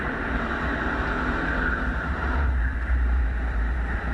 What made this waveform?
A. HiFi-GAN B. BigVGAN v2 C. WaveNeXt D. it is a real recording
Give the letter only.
B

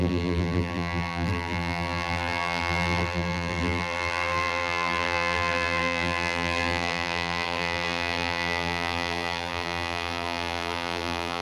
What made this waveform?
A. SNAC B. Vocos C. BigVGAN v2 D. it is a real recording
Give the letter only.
C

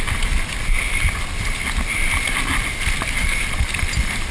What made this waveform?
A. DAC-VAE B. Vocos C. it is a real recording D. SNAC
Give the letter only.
C